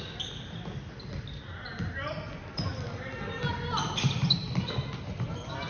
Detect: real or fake real